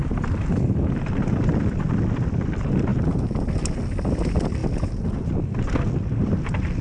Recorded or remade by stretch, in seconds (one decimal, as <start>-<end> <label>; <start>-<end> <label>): 0.0-2.9 remade; 2.9-3.8 recorded; 3.8-4.6 remade; 4.6-6.1 recorded; 6.1-6.8 remade